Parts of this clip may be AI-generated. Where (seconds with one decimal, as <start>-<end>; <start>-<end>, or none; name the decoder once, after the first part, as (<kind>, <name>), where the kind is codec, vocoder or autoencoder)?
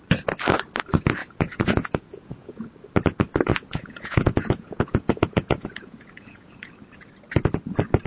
1.2-2.6 (vocoder, Vocos); 3.5-6.7